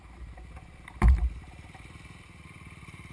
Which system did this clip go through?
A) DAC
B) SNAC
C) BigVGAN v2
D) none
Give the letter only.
D